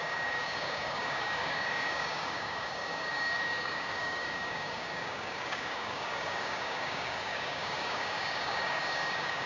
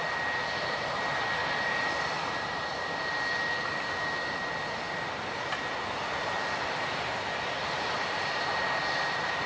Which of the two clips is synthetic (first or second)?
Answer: first